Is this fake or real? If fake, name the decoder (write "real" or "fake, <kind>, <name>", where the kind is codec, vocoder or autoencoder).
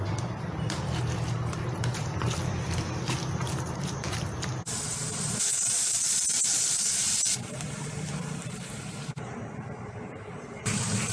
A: fake, vocoder, BigVGAN v2